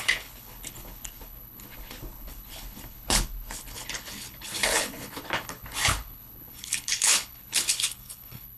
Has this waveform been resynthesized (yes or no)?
yes